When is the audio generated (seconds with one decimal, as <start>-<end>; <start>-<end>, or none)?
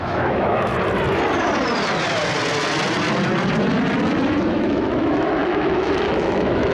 0.0-0.7; 4.5-6.7